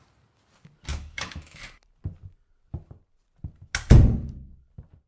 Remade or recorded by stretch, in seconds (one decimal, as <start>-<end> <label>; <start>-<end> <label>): 0.0-0.9 recorded; 0.9-1.6 remade; 1.6-5.1 recorded